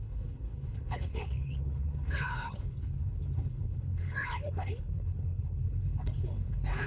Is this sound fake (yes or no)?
yes